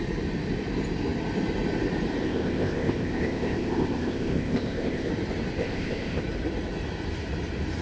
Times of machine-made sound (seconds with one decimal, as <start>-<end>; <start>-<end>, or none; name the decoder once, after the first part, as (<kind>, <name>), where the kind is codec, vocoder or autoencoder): 2.2-5.1 (codec, ZipCodec); 5.6-6.2